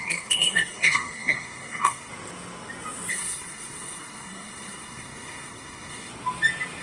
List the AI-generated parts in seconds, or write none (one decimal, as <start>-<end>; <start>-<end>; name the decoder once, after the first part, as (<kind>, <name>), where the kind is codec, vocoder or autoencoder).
0.0-2.1 (codec, SNAC); 3.1-6.1

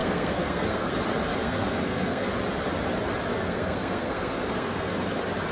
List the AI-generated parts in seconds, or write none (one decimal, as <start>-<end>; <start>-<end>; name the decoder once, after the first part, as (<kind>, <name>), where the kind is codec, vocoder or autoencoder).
0.0-0.9 (codec, SNAC); 1.4-2.3; 3.3-4.9

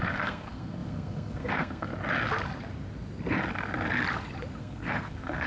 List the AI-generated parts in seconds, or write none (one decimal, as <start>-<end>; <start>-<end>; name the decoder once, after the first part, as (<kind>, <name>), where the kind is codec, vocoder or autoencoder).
0.0-1.9 (codec, SNAC); 4.6-5.5

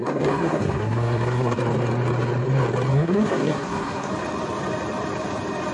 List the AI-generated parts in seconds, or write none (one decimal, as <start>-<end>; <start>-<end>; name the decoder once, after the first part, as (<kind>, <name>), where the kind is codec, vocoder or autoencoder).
0.0-1.6 (codec, SNAC); 2.9-4.1

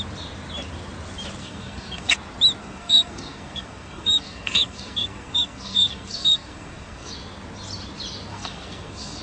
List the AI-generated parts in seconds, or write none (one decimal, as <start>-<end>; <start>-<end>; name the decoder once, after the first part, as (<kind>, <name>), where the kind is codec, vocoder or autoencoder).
1.4-2.1 (codec, SNAC); 2.6-7.1; 8.3-9.2

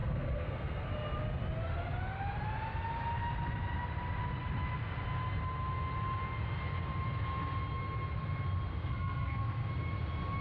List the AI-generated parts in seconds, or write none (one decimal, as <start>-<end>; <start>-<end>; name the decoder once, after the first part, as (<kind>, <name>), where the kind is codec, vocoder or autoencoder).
0.0-0.9 (codec, SNAC); 8.7-9.7

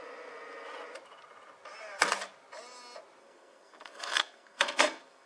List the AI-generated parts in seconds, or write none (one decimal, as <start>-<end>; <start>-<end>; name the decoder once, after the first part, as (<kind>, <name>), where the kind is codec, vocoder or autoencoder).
3.2-5.3 (codec, SNAC)

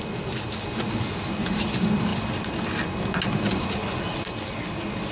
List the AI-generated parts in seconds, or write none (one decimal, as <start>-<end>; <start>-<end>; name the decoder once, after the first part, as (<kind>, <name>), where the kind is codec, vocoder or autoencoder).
none